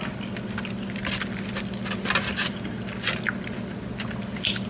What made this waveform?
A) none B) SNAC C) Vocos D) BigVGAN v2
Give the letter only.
A